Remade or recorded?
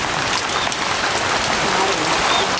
recorded